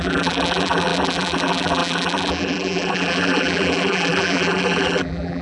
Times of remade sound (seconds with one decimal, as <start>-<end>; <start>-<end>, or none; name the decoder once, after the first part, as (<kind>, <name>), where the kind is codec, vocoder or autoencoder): 0.0-5.4 (vocoder, BigVGAN v2)